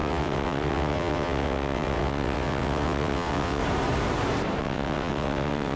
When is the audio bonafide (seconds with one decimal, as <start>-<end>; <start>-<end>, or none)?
3.6-4.6